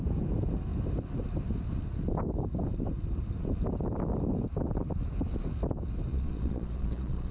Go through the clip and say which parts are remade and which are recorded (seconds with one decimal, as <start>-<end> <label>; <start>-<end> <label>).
0.0-6.1 recorded; 6.1-7.3 remade